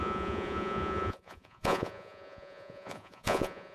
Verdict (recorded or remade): remade